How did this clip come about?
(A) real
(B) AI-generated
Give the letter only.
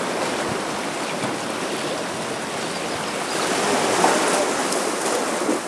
A